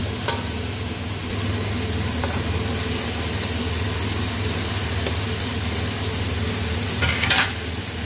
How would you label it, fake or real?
real